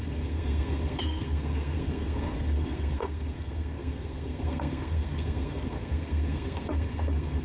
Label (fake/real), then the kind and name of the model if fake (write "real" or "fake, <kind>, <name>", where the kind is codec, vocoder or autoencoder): fake, codec, SNAC